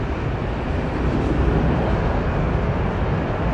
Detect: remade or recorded recorded